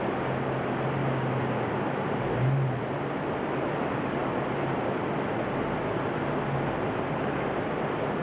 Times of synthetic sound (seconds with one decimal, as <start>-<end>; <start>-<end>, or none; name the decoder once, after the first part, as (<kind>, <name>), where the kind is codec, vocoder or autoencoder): none